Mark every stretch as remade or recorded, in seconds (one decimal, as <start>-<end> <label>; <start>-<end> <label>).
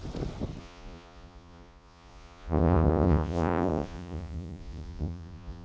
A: 0.0-0.6 recorded; 0.6-5.6 remade